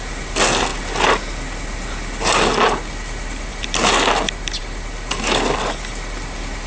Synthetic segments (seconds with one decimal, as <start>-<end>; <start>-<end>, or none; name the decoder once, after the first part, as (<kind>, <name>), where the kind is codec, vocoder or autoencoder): none